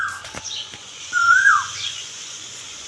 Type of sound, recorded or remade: remade